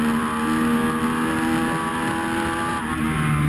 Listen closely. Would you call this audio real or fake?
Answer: real